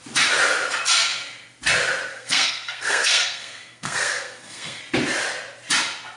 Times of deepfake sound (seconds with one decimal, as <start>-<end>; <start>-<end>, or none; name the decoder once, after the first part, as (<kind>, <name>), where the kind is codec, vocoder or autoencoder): 2.1-4.8 (codec, SNAC)